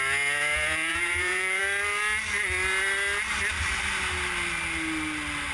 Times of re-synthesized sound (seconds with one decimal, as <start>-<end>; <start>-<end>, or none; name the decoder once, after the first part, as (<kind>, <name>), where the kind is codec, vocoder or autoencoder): 0.9-1.6 (vocoder, Vocos)